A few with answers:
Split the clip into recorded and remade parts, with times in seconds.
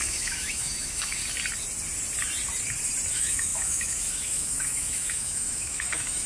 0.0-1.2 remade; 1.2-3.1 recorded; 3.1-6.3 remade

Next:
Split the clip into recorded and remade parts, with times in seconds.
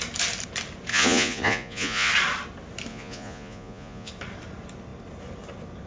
0.0-0.9 recorded; 0.9-2.1 remade; 2.1-2.9 recorded; 2.9-4.1 remade; 4.1-5.9 recorded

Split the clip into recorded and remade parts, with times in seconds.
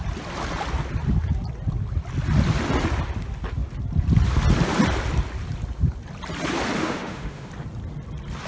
0.0-6.8 recorded; 6.8-7.5 remade; 7.5-8.5 recorded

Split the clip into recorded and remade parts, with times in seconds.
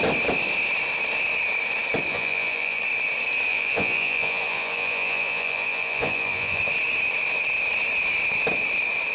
0.0-2.1 recorded; 2.1-2.8 remade; 2.8-3.5 recorded; 3.5-6.6 remade; 6.6-9.1 recorded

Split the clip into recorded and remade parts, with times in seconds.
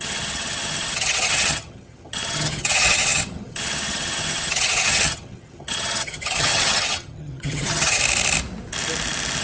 0.0-8.0 remade; 8.0-9.4 recorded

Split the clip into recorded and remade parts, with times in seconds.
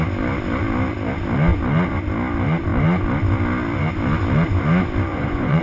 0.0-5.1 recorded; 5.1-5.6 remade